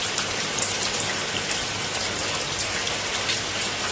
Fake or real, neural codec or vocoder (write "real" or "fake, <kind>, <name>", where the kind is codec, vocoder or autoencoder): real